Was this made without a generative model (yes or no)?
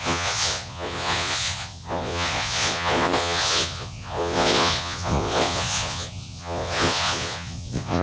no